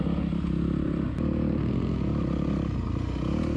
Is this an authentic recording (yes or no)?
yes